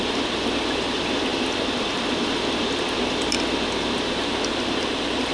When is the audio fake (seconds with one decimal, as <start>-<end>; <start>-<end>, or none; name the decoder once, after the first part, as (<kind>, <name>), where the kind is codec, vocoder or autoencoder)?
0.0-5.3 (vocoder, BigVGAN v2)